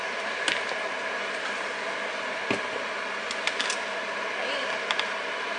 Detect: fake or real real